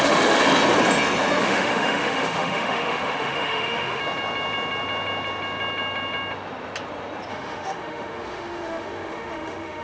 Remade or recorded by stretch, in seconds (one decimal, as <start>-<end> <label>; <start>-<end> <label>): 0.0-0.4 remade; 0.4-1.4 recorded; 1.4-4.0 remade; 4.0-7.3 recorded; 7.3-9.8 remade